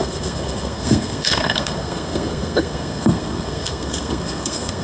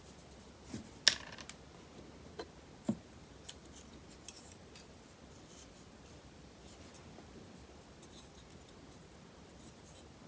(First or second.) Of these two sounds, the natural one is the second